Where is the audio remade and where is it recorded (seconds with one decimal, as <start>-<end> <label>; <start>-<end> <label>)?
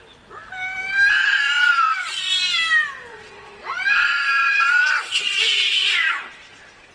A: 0.0-1.2 recorded; 1.2-2.3 remade; 2.3-3.1 recorded; 3.1-6.9 remade